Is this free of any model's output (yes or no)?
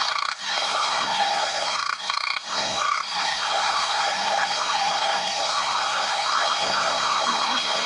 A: no